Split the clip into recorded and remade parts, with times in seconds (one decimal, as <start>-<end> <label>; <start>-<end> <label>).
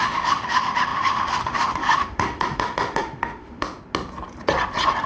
0.0-3.8 remade; 3.8-5.1 recorded